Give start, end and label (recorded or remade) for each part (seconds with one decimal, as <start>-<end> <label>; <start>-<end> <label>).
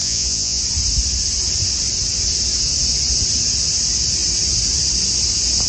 0.0-0.6 remade; 0.6-5.7 recorded